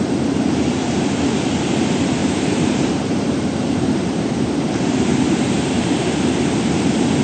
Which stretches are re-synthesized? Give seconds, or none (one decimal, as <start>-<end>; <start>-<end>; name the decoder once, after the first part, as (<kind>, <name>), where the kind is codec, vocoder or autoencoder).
2.2-4.2 (vocoder, BigVGAN v2); 5.1-5.9